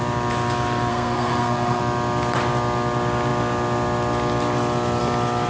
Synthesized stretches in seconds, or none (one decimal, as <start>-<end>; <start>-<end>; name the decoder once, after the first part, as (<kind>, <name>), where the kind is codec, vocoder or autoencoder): 0.9-1.8 (codec, SNAC)